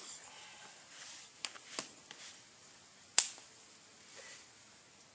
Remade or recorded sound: recorded